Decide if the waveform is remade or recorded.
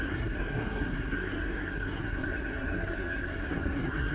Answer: remade